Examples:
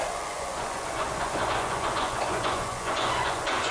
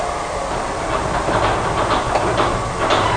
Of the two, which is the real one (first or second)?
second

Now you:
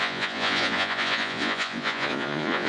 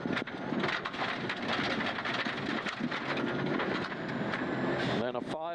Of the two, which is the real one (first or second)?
second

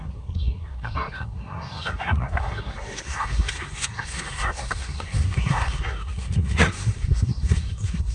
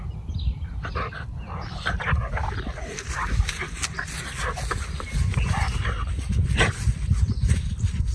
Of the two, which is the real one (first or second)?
second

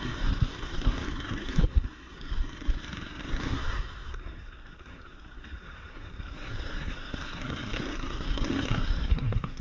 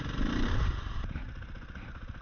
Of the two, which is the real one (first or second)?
second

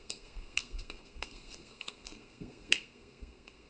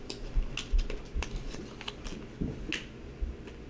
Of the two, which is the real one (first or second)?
second